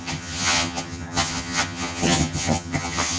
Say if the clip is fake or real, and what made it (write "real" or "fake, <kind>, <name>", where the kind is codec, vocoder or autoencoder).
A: fake, vocoder, HiFi-GAN